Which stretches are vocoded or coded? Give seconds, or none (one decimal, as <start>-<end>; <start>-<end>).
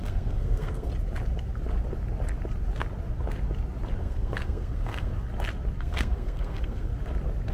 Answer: 0.0-0.9; 4.0-5.1; 5.8-6.9